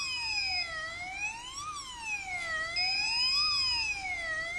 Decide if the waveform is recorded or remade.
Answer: recorded